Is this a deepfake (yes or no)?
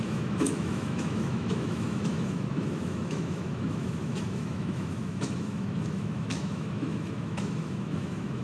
yes